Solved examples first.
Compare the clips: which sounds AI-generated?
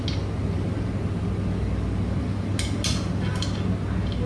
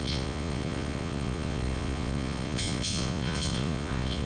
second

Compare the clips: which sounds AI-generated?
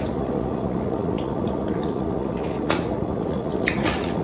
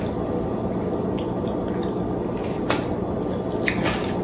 first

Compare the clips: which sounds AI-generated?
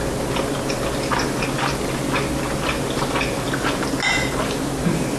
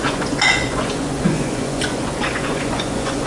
second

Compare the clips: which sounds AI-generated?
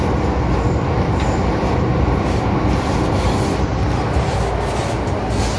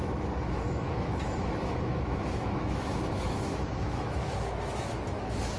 second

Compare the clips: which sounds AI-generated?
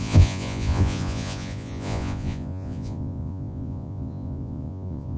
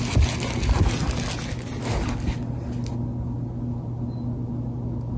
first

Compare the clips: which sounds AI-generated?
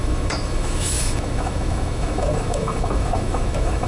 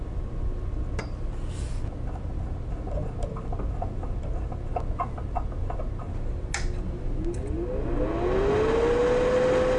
first